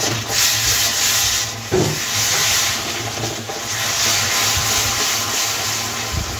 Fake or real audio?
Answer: real